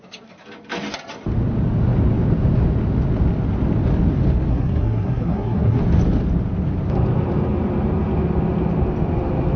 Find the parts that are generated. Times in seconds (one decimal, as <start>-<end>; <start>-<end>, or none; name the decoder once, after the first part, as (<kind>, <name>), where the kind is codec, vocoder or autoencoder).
4.5-5.8 (codec, SNAC)